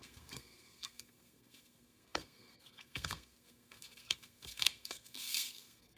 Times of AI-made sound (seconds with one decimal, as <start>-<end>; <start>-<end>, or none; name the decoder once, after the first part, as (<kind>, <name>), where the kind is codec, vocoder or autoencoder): 0.0-6.0 (codec, SNAC)